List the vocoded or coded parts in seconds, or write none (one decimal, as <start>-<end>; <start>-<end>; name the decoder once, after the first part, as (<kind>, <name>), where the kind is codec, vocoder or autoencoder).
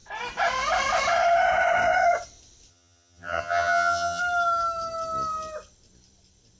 2.7-4.2 (vocoder, HiFi-GAN)